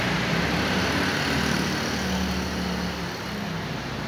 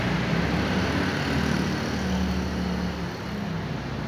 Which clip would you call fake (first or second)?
first